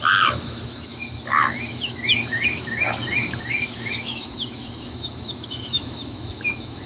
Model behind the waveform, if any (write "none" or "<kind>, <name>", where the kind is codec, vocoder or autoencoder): autoencoder, DAC-VAE